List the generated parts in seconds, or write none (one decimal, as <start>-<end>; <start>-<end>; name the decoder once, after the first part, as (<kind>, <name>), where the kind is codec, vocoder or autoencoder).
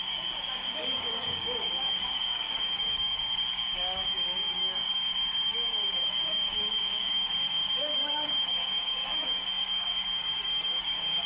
0.0-11.3 (codec, DAC)